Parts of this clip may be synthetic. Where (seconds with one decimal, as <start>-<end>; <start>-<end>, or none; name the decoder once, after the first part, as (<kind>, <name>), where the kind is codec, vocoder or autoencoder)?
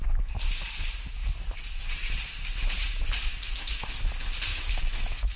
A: 1.2-1.8 (autoencoder, DAC-VAE); 3.3-3.9; 4.5-5.4